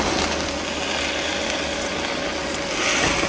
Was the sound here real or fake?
real